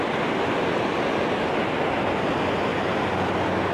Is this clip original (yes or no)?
yes